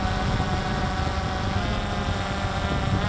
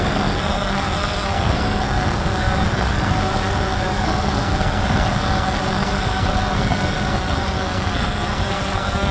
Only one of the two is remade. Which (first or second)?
second